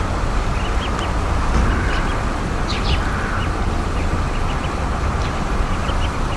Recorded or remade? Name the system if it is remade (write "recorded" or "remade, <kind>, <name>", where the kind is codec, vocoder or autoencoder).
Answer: recorded